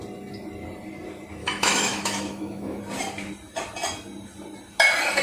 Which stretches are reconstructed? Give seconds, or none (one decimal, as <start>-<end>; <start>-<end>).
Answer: 1.4-2.8